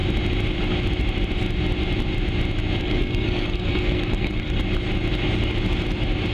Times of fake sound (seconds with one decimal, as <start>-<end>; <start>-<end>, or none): 2.8-4.6